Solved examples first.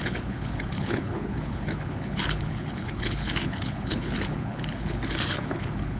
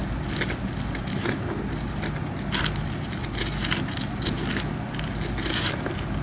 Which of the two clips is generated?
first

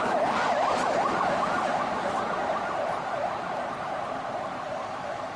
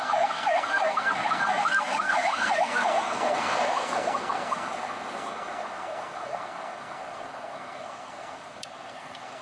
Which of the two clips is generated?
second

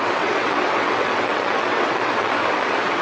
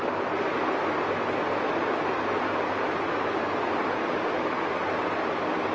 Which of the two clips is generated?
first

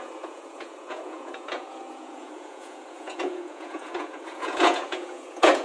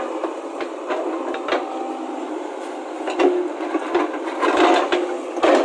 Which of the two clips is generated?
first